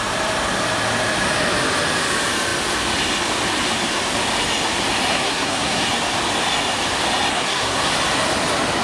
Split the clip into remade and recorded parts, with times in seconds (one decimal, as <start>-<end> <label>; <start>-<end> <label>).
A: 0.0-5.1 recorded; 5.1-5.8 remade; 5.8-7.3 recorded; 7.3-7.9 remade; 7.9-8.8 recorded